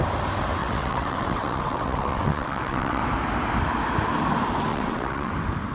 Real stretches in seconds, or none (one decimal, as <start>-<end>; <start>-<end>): 0.0-0.6; 3.0-4.7; 5.3-5.7